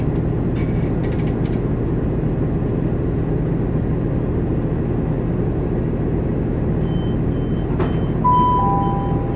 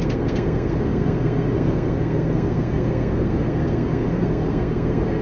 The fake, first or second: second